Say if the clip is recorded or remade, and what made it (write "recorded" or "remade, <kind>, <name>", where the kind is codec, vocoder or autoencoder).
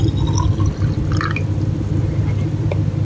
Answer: recorded